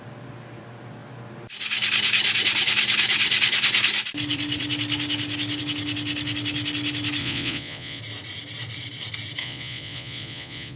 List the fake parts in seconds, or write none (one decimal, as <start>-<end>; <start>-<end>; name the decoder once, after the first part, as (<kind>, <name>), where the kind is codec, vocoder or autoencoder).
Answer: 7.2-8.0 (vocoder, Vocos); 9.4-10.8